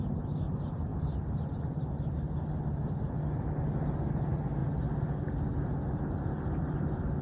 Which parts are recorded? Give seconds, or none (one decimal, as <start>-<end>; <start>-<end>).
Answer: 0.0-7.2